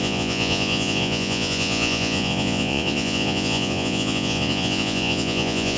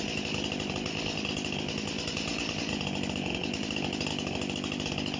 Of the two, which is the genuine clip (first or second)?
second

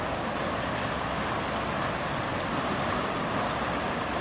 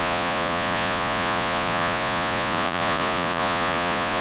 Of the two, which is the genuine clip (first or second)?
first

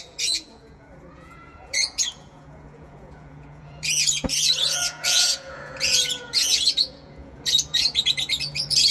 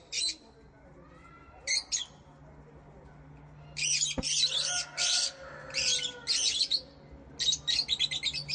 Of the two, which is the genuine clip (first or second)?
second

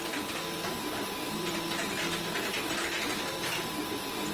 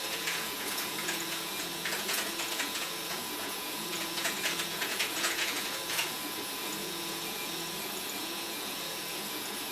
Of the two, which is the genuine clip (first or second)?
first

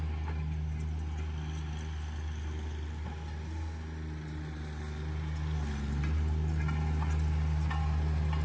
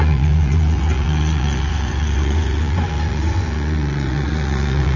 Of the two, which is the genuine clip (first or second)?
first